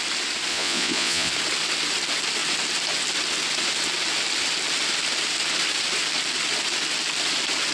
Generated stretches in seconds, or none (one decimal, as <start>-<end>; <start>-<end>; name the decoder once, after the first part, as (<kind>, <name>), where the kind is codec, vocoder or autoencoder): 0.5-1.3 (vocoder, Vocos)